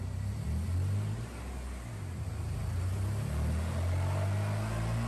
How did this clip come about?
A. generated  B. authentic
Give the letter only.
B